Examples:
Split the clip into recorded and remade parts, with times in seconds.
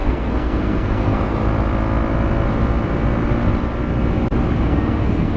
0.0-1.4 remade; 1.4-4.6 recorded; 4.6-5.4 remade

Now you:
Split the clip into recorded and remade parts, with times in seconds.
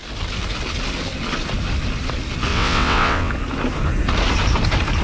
0.0-2.5 recorded; 2.5-3.3 remade; 3.3-5.0 recorded